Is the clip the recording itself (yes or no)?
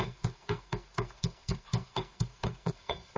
no